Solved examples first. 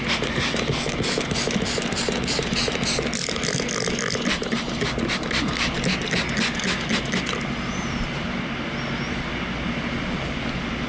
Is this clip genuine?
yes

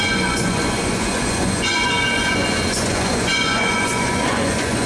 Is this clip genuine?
no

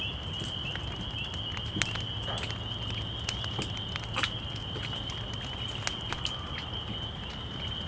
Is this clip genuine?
yes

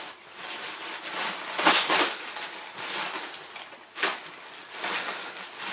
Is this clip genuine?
yes